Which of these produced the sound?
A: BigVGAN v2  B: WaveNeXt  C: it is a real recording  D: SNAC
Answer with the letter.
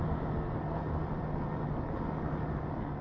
C